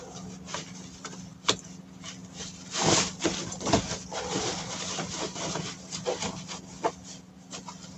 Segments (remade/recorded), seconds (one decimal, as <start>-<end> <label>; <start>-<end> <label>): 0.0-2.2 recorded; 2.2-5.5 remade; 5.5-8.0 recorded

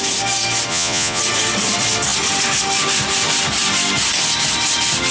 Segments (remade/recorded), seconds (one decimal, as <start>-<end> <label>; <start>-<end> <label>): 0.0-0.7 recorded; 0.7-1.2 remade; 1.2-5.1 recorded

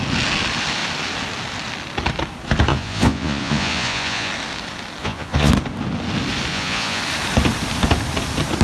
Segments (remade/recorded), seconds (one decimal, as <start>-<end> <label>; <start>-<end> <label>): 0.0-2.7 recorded; 2.7-4.3 remade; 4.3-5.0 recorded; 5.0-5.5 remade; 5.5-6.5 recorded; 6.5-7.0 remade; 7.0-8.6 recorded